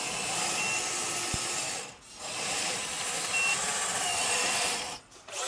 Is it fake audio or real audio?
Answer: real